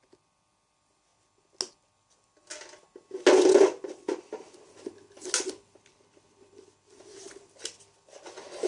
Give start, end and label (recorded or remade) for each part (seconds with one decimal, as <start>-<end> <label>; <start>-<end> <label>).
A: 0.0-8.7 recorded